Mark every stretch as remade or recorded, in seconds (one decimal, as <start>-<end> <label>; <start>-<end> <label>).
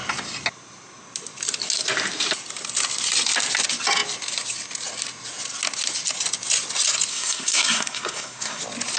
0.0-7.1 recorded; 7.1-8.6 remade; 8.6-9.0 recorded